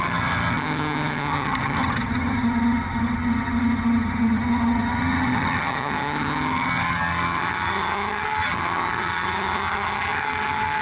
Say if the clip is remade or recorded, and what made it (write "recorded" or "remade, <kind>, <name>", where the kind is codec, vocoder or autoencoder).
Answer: remade, vocoder, HiFi-GAN